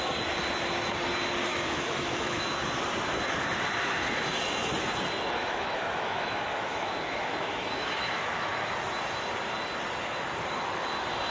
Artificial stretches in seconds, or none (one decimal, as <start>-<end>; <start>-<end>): 1.5-2.4; 5.4-8.7